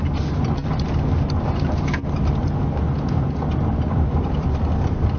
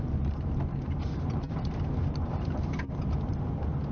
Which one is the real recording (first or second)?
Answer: first